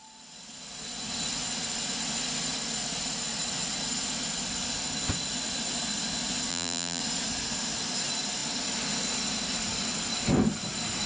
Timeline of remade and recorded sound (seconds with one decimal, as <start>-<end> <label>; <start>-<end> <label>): 0.0-6.5 recorded; 6.5-7.0 remade; 7.0-11.1 recorded